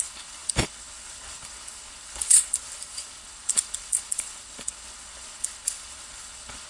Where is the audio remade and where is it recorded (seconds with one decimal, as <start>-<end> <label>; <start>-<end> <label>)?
0.0-6.7 remade